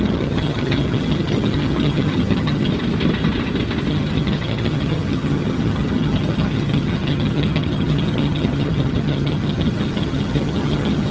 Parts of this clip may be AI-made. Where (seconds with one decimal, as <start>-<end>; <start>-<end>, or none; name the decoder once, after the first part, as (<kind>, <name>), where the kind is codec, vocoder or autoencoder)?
0.0-2.7 (vocoder, HiFi-GAN); 3.9-11.1